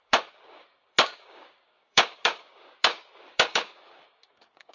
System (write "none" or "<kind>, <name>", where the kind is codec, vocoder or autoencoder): codec, DAC